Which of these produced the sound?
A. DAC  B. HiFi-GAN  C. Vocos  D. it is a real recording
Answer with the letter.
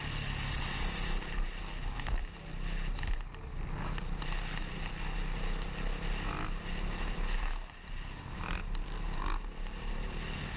D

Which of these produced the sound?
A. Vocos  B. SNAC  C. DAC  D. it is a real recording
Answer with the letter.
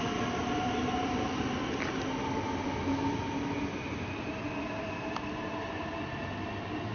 D